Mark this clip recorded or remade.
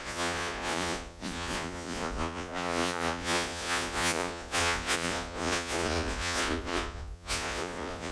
remade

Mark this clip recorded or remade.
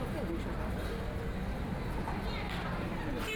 recorded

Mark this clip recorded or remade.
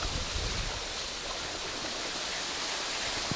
recorded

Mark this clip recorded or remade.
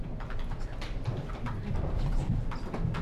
recorded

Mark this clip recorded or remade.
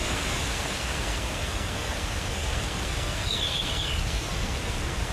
remade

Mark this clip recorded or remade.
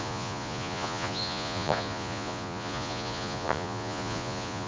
remade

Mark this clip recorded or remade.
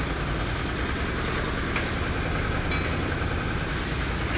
recorded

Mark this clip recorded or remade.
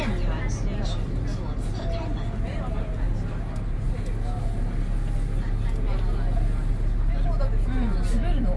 recorded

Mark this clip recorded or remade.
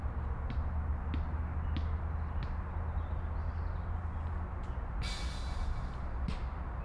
recorded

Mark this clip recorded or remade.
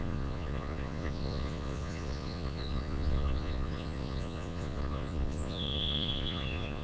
remade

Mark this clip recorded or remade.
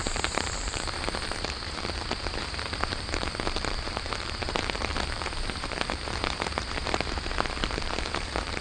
remade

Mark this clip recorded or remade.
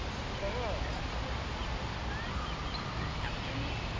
recorded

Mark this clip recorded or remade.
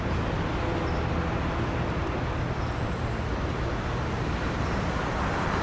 recorded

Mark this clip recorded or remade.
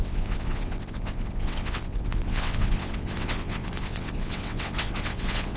remade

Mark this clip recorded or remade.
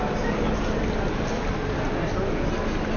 recorded